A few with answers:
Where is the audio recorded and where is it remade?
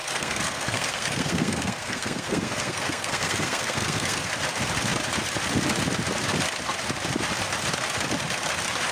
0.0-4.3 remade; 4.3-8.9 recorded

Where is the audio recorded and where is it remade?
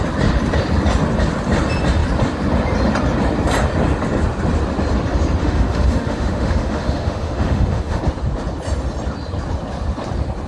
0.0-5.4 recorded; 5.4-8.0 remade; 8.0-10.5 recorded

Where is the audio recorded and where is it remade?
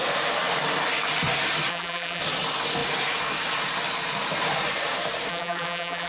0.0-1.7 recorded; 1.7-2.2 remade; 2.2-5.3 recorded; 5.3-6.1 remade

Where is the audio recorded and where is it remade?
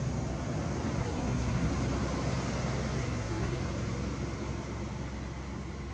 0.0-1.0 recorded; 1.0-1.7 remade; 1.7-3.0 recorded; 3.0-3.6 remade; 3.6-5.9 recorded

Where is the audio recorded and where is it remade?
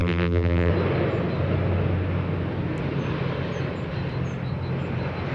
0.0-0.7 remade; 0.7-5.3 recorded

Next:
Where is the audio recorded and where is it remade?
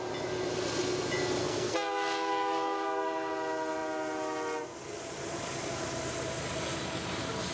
0.0-1.4 recorded; 1.4-3.3 remade; 3.3-7.5 recorded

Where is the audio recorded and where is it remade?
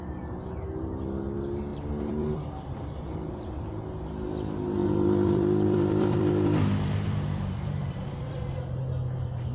0.0-1.7 recorded; 1.7-3.3 remade; 3.3-4.8 recorded; 4.8-8.6 remade; 8.6-9.5 recorded